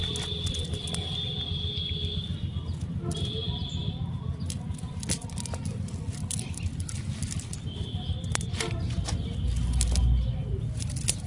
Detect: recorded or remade recorded